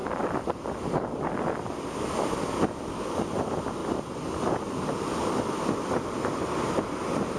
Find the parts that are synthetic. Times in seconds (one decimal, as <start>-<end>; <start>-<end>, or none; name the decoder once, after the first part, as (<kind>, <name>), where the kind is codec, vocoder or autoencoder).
0.0-1.6 (vocoder, BigVGAN v2)